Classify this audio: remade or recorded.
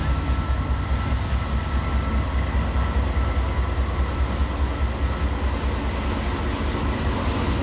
recorded